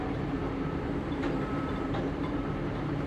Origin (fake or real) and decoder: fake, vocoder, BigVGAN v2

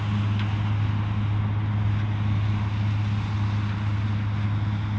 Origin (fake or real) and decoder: real